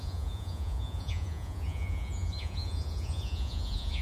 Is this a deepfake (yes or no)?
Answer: yes